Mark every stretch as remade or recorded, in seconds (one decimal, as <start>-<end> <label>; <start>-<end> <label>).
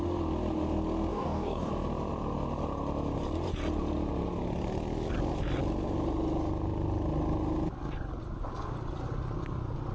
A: 0.0-1.1 recorded; 1.1-1.7 remade; 1.7-9.9 recorded